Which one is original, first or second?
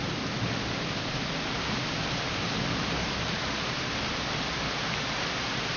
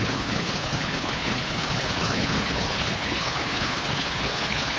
first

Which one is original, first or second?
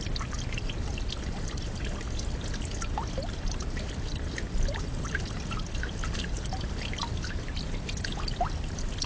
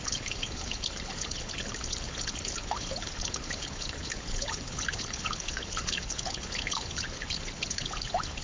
first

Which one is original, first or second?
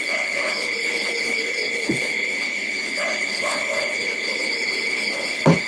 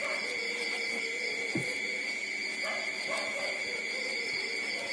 second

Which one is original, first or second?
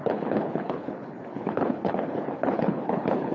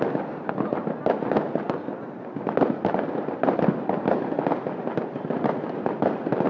second